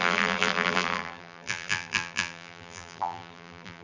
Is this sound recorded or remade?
remade